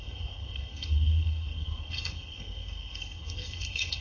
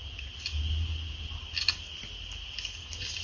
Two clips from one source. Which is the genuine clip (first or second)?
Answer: second